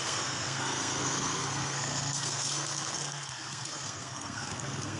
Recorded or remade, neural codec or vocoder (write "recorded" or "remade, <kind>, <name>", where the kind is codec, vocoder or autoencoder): remade, codec, SNAC